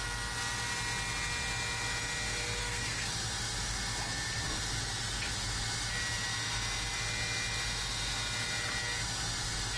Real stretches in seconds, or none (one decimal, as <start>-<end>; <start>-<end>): 0.0-2.6; 3.1-9.8